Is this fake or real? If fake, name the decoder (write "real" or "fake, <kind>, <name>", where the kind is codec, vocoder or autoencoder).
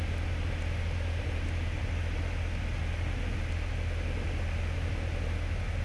real